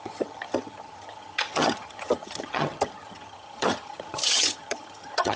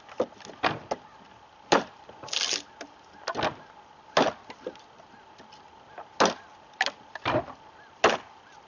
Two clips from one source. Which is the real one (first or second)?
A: second